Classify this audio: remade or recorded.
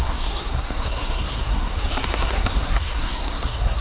remade